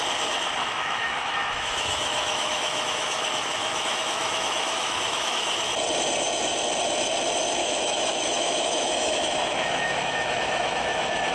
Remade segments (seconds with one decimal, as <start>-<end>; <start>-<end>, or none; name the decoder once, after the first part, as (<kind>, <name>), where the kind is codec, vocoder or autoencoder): 0.6-5.7 (autoencoder, DAC-VAE); 7.6-11.3